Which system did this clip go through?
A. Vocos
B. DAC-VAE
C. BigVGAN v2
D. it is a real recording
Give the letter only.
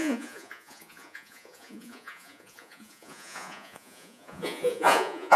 A